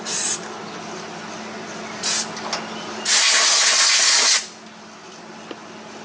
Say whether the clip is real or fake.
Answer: real